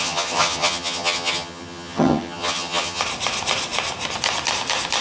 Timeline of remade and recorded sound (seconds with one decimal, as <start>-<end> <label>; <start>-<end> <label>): 0.0-3.0 remade; 3.0-5.0 recorded